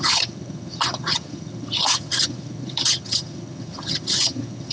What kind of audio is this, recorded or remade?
remade